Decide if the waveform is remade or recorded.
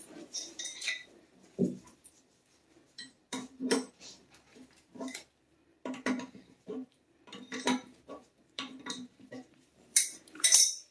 remade